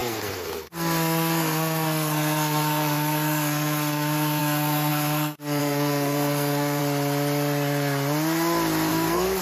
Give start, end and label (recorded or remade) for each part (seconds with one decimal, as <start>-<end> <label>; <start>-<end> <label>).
0.0-6.8 remade; 6.8-8.9 recorded; 8.9-9.4 remade